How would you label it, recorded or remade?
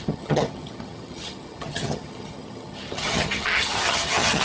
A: remade